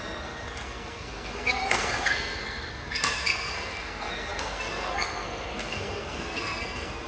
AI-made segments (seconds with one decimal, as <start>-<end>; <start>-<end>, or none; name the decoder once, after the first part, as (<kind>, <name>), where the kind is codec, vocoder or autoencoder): 0.0-7.1 (codec, SNAC)